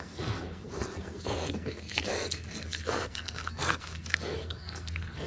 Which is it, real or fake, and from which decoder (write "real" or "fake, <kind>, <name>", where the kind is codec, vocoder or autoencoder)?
fake, codec, SNAC